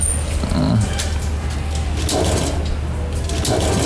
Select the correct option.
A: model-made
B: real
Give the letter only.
B